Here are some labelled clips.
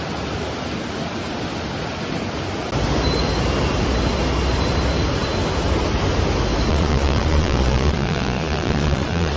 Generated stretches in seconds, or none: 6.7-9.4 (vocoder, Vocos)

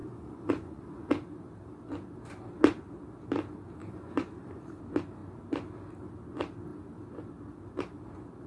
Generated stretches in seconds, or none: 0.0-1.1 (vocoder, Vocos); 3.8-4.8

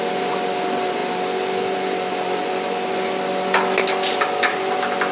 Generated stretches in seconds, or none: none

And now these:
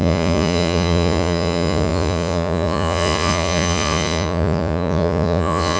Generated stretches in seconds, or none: 0.0-5.8 (vocoder, Vocos)

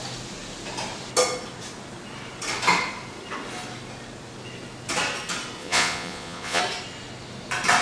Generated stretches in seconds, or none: 5.6-6.6 (vocoder, Vocos)

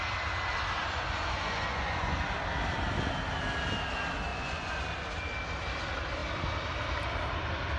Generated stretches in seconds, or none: 0.8-2.2 (vocoder, Vocos); 4.3-4.8

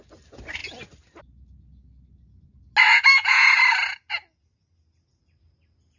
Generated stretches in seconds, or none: 2.9-3.5 (vocoder, Vocos)

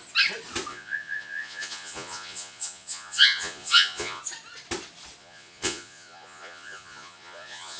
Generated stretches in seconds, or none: 0.7-4.2 (vocoder, Vocos); 5.2-7.8